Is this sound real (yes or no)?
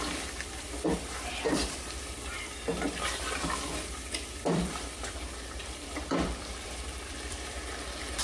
no